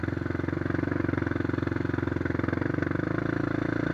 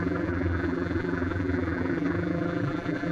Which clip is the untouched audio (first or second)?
first